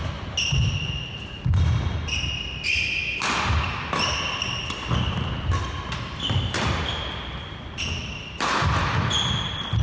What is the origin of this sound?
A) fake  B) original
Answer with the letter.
B